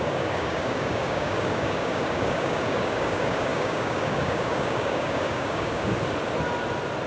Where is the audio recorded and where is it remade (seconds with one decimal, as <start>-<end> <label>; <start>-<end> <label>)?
0.0-5.9 remade; 5.9-7.1 recorded